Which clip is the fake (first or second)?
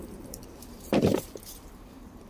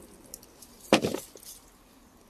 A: first